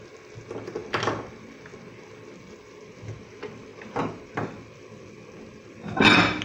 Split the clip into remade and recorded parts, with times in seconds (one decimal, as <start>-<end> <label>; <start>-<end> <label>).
0.0-3.7 recorded; 3.7-4.3 remade; 4.3-6.4 recorded